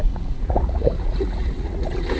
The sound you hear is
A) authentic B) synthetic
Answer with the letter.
B